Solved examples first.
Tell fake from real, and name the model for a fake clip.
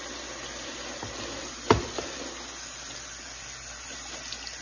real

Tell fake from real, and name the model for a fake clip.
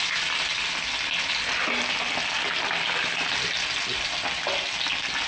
real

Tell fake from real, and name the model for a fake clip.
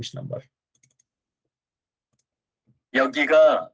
real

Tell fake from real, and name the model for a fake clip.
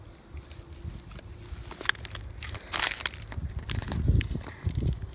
real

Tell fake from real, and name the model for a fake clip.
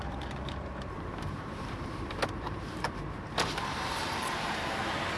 fake, vocoder, BigVGAN v2